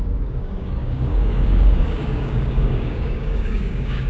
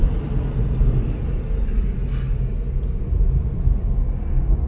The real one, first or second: second